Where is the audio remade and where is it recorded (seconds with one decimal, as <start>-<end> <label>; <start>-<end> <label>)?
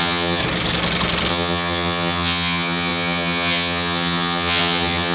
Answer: 0.0-0.4 remade; 0.4-1.3 recorded; 1.3-5.1 remade